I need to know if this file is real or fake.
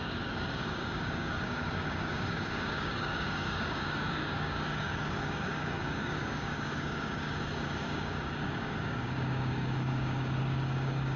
fake